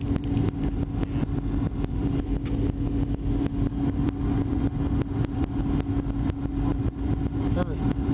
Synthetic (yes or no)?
no